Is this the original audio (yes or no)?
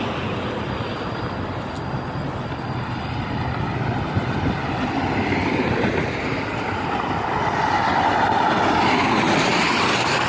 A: yes